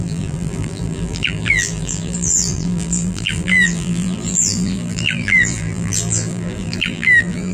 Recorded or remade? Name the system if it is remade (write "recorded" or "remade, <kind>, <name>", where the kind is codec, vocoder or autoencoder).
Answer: remade, vocoder, BigVGAN v2